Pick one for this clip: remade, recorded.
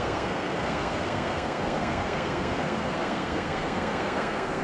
remade